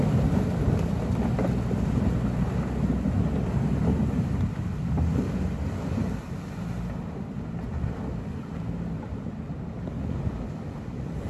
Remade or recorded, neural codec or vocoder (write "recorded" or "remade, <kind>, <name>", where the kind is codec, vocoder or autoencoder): recorded